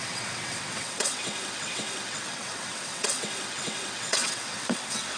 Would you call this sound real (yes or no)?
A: no